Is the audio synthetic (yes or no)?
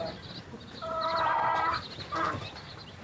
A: no